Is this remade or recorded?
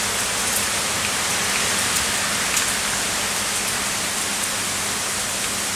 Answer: recorded